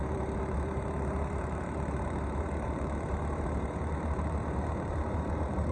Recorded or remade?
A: remade